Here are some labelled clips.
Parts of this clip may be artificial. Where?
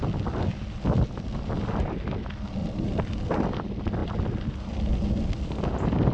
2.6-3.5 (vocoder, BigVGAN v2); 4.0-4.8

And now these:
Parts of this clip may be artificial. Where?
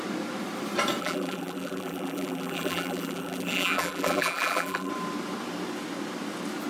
1.0-4.9 (vocoder, BigVGAN v2)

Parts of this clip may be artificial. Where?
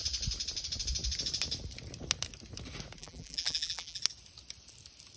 3.0-4.0 (vocoder, BigVGAN v2)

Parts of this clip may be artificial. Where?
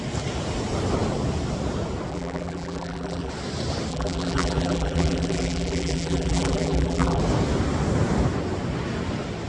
2.1-3.3 (vocoder, BigVGAN v2); 3.9-7.2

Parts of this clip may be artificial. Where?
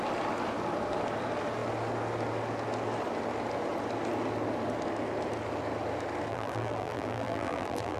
6.3-8.0 (vocoder, BigVGAN v2)